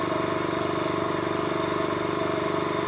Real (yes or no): yes